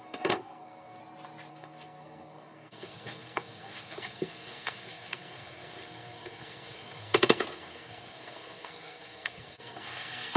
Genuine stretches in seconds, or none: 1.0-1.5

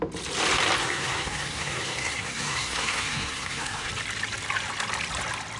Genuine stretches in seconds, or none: 0.0-0.8; 3.9-5.6

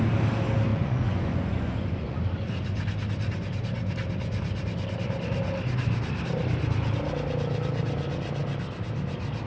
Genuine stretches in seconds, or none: 0.0-0.7; 2.2-9.5

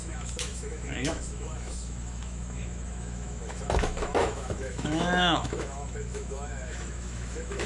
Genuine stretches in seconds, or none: none

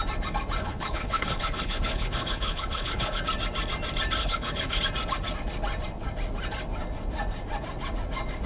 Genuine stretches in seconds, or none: 0.0-0.6; 3.2-4.2; 4.8-8.5

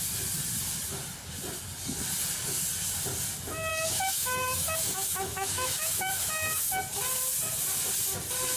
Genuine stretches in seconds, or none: 0.0-3.7; 6.7-8.6

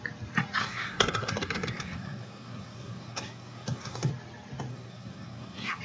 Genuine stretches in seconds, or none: 0.0-0.6; 4.1-4.7